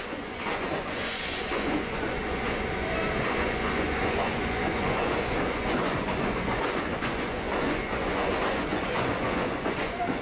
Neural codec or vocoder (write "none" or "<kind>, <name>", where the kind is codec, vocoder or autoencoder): vocoder, Vocos